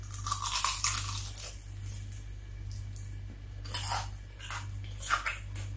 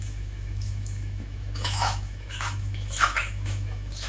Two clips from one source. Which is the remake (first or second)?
second